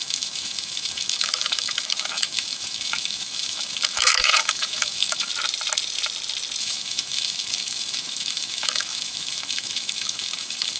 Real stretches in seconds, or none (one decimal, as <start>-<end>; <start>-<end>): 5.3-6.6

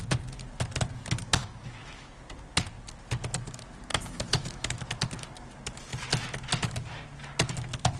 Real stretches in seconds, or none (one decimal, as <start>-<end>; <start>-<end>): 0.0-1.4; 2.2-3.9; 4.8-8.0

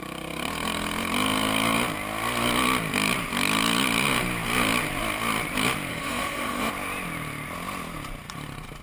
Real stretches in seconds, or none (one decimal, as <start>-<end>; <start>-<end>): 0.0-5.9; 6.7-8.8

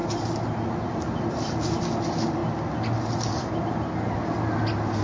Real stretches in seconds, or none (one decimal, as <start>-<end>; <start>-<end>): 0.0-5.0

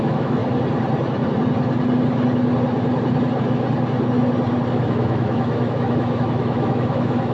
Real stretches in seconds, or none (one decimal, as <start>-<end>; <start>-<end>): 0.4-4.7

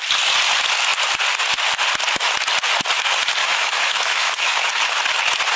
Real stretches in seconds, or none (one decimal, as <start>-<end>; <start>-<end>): 0.0-3.4; 5.0-5.6